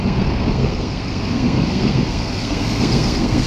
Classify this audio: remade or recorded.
remade